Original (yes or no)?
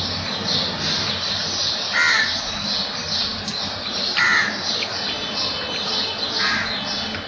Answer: yes